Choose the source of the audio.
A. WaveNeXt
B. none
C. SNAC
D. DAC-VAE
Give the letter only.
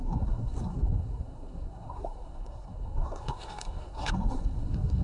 C